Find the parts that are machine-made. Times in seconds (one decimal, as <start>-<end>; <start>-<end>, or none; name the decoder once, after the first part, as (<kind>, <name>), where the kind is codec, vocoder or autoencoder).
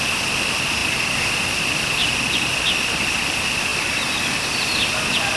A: none